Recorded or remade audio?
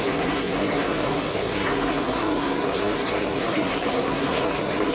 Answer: remade